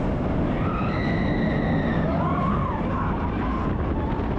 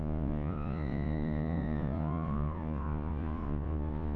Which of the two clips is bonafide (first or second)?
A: first